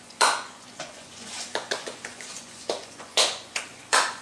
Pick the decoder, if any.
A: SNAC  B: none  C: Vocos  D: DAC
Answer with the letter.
C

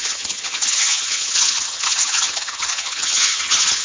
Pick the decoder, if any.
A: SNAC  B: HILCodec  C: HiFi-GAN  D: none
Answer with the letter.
C